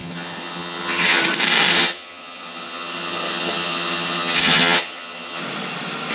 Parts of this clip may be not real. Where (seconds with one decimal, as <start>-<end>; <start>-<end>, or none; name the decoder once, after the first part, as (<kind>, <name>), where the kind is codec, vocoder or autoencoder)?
0.0-1.2 (vocoder, HiFi-GAN); 1.7-5.4